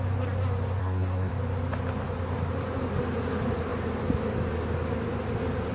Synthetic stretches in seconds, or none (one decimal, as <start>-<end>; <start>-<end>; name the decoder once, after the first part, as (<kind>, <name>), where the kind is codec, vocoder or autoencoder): 0.8-1.3 (codec, SNAC)